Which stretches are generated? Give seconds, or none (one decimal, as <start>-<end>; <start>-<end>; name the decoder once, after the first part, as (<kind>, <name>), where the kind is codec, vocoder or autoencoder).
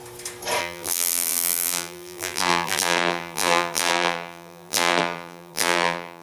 0.6-6.2 (vocoder, BigVGAN v2)